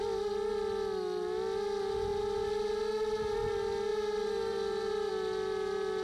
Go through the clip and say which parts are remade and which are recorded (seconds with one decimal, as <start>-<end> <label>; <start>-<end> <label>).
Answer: 0.0-3.9 recorded; 3.9-5.1 remade; 5.1-6.0 recorded